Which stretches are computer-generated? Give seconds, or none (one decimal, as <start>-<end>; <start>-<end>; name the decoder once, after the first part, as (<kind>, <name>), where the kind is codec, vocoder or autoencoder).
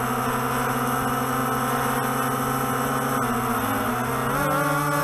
none